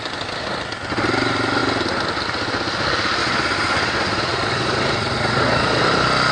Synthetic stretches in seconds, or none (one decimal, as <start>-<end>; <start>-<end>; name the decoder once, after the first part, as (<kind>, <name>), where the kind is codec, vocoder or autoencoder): 3.2-5.8 (vocoder, Vocos)